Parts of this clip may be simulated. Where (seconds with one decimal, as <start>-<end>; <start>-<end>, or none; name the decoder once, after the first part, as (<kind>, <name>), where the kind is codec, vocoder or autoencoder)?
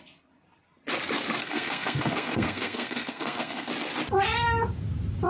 1.4-3.7 (codec, SNAC)